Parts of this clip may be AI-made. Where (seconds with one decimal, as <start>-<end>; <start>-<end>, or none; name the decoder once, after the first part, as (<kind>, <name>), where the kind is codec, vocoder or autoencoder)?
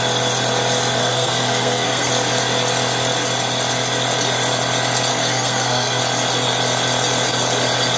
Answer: 1.0-2.1 (codec, SNAC); 5.1-6.0